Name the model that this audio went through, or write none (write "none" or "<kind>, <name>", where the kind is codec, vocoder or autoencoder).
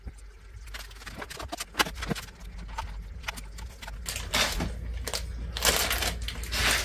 none